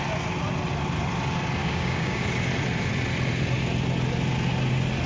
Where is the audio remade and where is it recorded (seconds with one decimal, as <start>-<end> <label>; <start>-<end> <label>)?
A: 0.0-1.6 recorded; 1.6-2.2 remade; 2.2-5.1 recorded

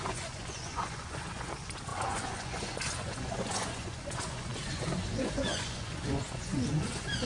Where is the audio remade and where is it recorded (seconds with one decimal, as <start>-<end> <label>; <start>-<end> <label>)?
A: 0.0-7.2 remade